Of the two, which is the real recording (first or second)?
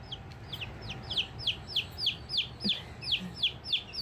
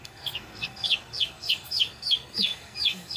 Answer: first